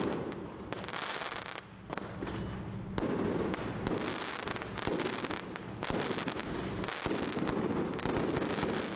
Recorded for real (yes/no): yes